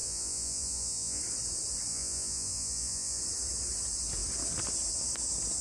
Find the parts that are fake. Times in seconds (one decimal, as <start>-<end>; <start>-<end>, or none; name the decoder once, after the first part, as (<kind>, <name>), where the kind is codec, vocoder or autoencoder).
0.0-1.2 (vocoder, Vocos); 1.9-3.2